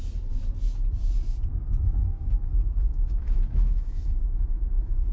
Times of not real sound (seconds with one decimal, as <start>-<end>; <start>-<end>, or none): 2.0-5.1